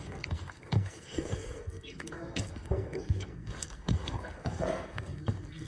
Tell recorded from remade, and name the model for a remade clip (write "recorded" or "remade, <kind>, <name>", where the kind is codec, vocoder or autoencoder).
remade, codec, SNAC